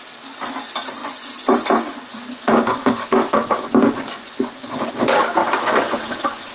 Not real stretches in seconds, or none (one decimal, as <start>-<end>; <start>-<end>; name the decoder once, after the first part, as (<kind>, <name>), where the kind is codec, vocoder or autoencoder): 1.0-4.9 (vocoder, Vocos); 5.4-6.5